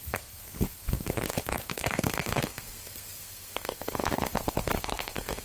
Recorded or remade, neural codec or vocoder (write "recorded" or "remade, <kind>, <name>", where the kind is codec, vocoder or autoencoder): remade, codec, SNAC